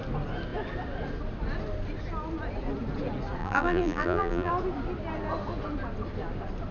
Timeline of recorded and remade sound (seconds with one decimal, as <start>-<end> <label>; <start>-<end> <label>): 0.0-3.4 recorded; 3.4-4.5 remade; 4.5-6.7 recorded